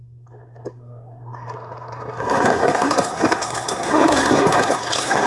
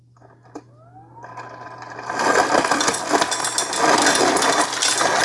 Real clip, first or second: second